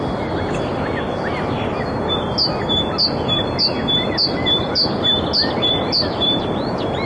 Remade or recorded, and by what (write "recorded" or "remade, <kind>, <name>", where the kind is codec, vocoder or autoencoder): recorded